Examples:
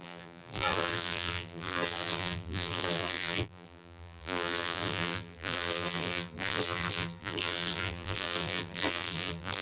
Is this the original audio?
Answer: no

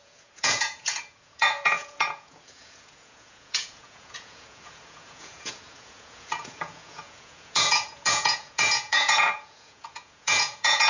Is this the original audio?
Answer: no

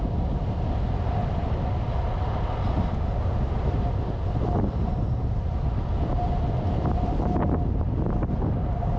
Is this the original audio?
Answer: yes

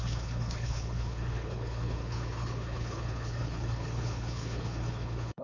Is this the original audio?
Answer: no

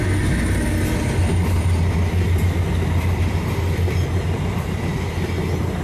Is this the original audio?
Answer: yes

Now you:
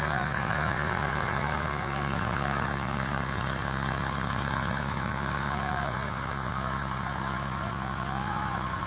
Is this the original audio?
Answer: no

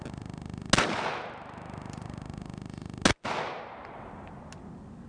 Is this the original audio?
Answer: yes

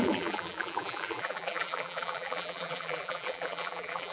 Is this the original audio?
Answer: no